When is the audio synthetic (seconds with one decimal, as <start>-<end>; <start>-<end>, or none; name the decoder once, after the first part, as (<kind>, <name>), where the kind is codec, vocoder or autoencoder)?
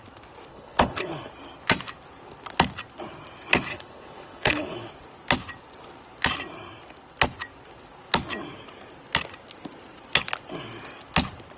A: 0.5-1.3 (codec, HILCodec); 3.7-4.9